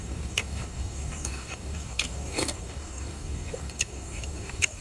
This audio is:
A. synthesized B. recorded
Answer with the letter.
A